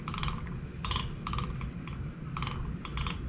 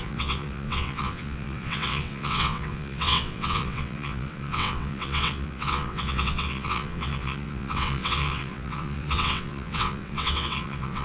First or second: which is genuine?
first